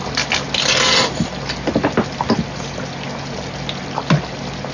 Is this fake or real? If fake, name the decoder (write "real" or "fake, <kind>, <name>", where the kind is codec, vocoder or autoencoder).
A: real